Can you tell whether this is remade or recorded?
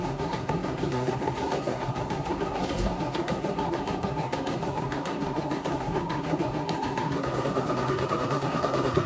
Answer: remade